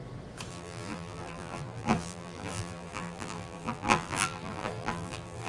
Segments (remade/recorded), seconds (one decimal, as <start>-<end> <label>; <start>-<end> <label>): 0.0-0.5 recorded; 0.5-5.5 remade

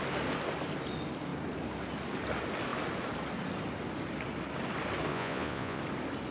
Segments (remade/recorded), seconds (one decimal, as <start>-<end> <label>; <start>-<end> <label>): 0.0-5.1 recorded; 5.1-5.8 remade; 5.8-6.3 recorded

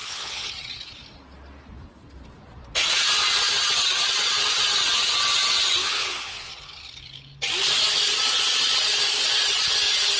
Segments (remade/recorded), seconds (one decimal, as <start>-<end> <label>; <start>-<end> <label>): 0.0-0.5 remade; 0.5-5.8 recorded; 5.8-6.5 remade; 6.5-10.2 recorded

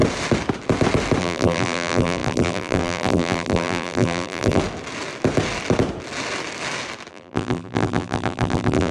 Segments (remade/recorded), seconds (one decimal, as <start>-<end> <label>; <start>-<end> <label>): 0.0-1.2 recorded; 1.2-4.6 remade; 4.6-7.1 recorded; 7.1-8.9 remade

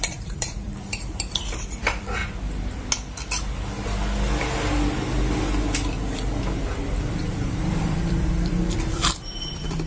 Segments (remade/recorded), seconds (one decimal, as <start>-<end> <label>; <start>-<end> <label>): 0.0-2.2 remade; 2.2-7.1 recorded; 7.1-9.9 remade